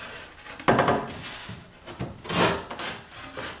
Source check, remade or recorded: recorded